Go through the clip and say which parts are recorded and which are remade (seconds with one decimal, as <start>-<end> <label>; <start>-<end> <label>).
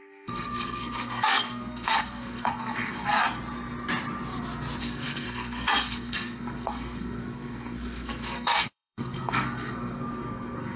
0.0-3.2 remade; 3.2-4.8 recorded; 4.8-10.8 remade